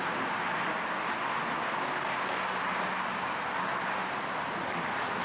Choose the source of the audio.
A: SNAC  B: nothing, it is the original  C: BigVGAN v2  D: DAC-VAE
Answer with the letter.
B